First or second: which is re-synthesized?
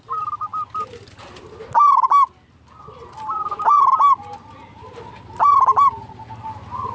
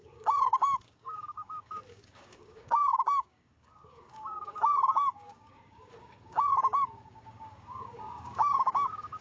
second